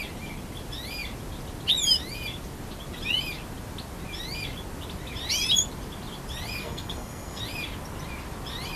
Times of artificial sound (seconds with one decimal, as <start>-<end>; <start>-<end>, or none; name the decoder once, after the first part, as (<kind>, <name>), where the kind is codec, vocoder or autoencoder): 6.6-7.4 (codec, SNAC)